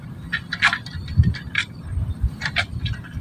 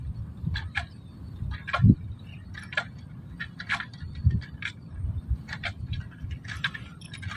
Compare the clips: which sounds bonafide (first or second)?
first